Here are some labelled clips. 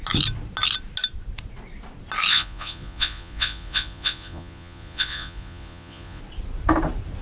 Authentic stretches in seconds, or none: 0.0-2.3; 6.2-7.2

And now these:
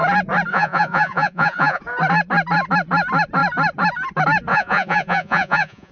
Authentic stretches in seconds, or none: 0.0-0.5; 1.8-4.5

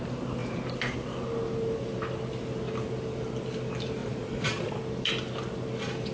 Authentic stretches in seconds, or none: 0.0-4.0; 4.8-6.1

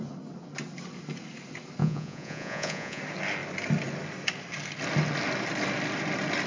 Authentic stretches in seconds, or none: 0.0-1.8; 3.0-6.5